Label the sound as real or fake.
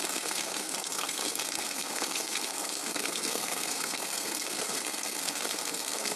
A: fake